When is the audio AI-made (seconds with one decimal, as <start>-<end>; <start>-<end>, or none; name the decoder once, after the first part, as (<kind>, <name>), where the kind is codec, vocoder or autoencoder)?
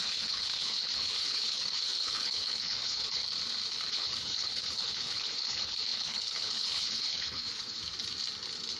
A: 0.0-3.2 (codec, HILCodec); 3.9-7.8